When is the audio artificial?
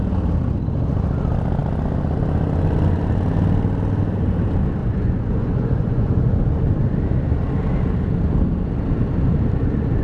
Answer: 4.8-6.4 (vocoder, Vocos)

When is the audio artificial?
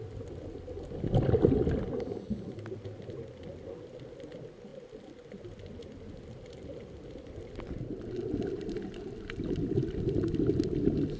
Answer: none